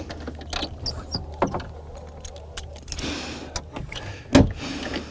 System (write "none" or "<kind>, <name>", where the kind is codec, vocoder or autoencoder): none